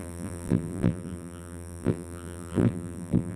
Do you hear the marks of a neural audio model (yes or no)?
yes